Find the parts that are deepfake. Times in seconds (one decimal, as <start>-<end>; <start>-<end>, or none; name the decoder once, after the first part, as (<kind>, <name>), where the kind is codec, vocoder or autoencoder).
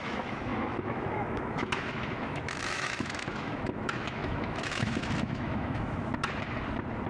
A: 0.0-6.1 (autoencoder, DAC-VAE)